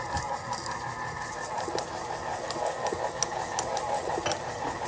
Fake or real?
real